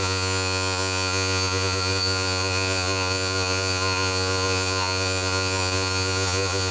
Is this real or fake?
fake